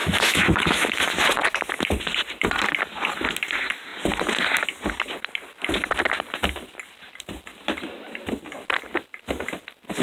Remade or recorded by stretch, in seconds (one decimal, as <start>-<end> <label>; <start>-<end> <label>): 0.0-1.1 remade; 1.1-10.0 recorded